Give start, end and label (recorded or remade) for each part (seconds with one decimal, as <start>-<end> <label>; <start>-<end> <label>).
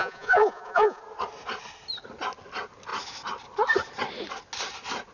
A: 0.0-1.0 remade; 1.0-5.1 recorded